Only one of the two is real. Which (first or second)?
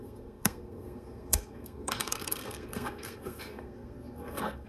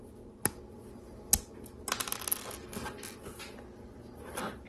second